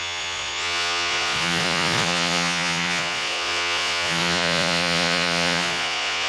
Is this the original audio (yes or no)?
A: no